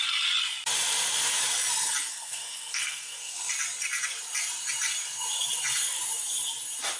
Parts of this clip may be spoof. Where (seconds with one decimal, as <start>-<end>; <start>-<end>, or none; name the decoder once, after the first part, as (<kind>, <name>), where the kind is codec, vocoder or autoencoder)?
2.1-3.5 (codec, SNAC)